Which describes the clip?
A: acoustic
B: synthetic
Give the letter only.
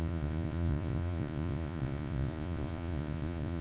B